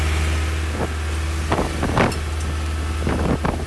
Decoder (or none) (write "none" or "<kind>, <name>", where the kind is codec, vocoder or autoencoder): none